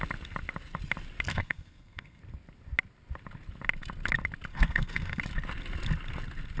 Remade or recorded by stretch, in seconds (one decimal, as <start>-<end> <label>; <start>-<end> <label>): 0.0-1.3 recorded; 1.3-2.2 remade; 2.2-4.5 recorded; 4.5-5.2 remade; 5.2-6.6 recorded